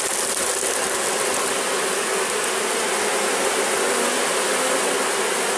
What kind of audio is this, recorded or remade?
recorded